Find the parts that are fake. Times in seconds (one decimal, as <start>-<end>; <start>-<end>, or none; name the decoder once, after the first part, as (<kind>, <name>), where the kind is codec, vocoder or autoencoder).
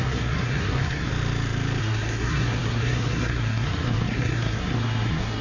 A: 0.0-1.1 (codec, SNAC); 1.8-5.4